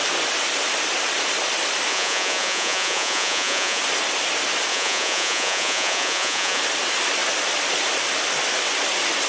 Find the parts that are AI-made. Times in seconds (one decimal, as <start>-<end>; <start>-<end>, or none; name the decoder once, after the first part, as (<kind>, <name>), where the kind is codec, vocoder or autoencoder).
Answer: 1.9-3.8 (vocoder, Vocos); 4.7-6.6